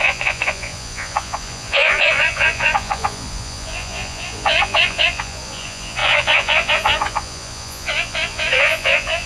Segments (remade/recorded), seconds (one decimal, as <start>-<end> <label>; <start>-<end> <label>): 0.0-9.3 remade